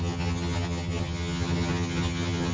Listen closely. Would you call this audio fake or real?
fake